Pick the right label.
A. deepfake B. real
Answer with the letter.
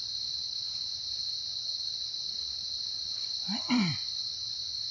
A